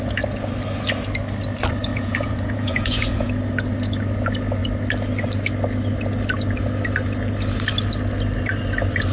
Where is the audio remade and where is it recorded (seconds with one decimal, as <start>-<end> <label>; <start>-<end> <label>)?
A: 0.0-1.9 recorded; 1.9-3.3 remade; 3.3-9.1 recorded